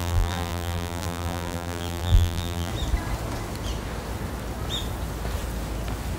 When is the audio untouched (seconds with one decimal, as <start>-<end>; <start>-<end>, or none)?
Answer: 2.7-6.2